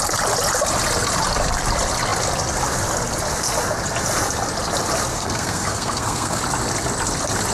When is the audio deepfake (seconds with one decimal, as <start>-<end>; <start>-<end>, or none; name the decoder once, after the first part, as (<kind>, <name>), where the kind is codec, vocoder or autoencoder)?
5.1-6.4 (codec, SNAC)